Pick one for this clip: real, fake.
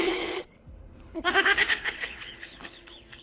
fake